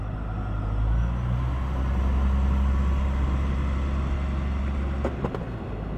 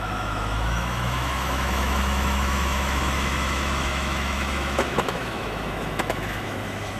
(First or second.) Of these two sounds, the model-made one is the second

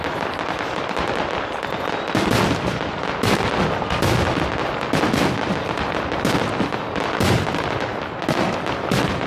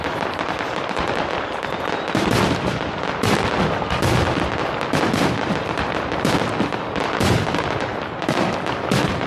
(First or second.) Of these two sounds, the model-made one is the second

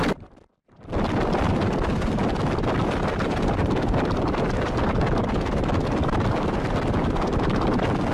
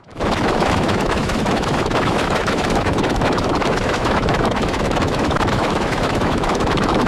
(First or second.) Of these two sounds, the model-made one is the second